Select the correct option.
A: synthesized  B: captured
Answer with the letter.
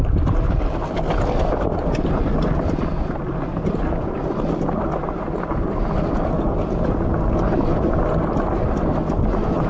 B